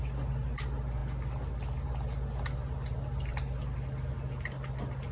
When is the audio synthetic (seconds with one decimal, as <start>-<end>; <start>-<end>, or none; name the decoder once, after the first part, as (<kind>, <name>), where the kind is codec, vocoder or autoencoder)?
none